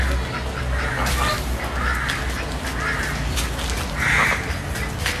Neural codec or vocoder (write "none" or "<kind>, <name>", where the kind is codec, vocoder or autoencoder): none